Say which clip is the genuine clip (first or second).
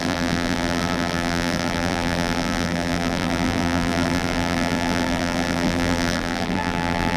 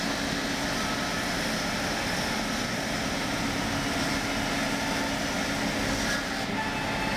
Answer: second